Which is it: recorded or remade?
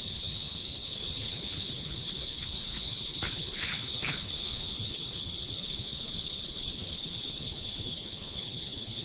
remade